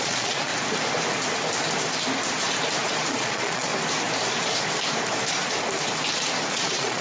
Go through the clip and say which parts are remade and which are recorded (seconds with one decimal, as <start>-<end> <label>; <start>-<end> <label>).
0.0-0.5 remade; 0.5-3.1 recorded; 3.1-3.7 remade; 3.7-6.5 recorded; 6.5-7.0 remade